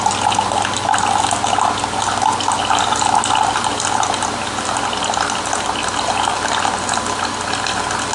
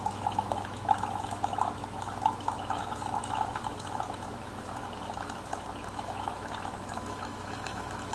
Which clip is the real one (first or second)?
first